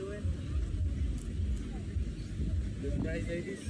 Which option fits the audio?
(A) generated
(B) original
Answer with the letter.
B